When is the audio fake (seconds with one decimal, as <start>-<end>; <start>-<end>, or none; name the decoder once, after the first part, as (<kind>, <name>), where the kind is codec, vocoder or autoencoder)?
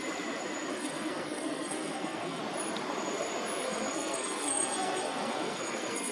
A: 0.7-2.4 (codec, SNAC); 3.6-6.1